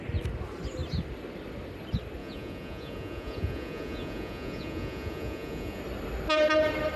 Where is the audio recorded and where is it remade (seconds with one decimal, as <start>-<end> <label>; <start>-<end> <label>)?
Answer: 0.0-2.2 recorded; 2.2-5.8 remade; 5.8-7.0 recorded